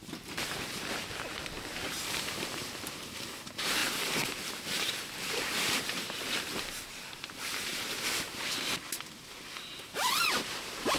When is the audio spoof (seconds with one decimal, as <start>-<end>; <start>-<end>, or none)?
0.0-7.7; 9.6-11.0